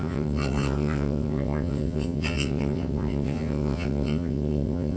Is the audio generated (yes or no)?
yes